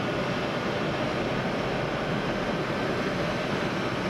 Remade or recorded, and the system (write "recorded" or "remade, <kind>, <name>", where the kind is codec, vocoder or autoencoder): recorded